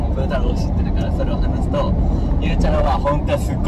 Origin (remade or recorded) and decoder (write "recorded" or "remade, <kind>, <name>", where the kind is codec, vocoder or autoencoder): recorded